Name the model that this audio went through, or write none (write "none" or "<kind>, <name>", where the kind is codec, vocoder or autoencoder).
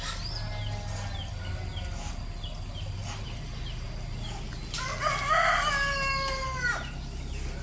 none